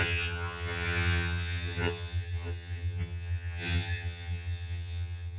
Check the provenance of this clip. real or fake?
fake